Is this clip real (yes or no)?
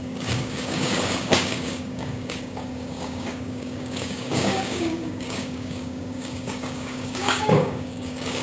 no